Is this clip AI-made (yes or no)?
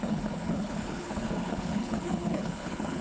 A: yes